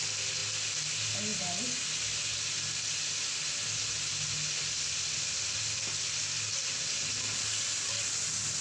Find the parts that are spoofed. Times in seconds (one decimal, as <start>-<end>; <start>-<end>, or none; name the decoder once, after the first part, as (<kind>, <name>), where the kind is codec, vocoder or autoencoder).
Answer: none